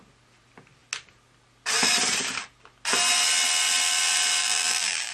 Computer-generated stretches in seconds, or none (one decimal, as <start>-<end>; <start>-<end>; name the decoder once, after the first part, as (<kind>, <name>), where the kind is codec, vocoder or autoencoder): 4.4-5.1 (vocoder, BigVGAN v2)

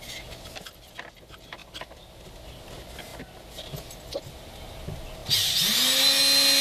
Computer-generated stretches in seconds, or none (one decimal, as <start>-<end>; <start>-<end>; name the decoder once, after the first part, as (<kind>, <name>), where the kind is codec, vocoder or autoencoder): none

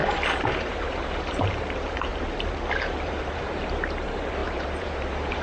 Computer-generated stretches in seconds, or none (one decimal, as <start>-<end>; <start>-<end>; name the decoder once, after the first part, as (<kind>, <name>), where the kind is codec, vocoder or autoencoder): 0.5-2.1 (vocoder, BigVGAN v2); 2.9-5.4